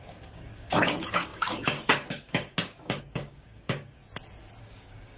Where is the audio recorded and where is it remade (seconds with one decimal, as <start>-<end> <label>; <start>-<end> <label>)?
0.0-4.0 remade; 4.0-4.6 recorded; 4.6-5.2 remade

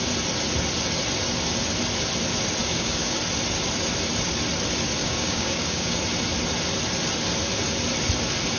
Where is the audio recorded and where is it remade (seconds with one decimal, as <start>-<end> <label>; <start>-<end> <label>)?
0.0-2.6 recorded; 2.6-3.2 remade; 3.2-5.0 recorded; 5.0-6.0 remade; 6.0-8.6 recorded